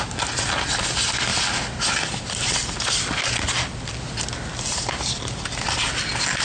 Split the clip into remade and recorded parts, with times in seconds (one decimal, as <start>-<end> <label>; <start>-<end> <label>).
0.0-6.4 recorded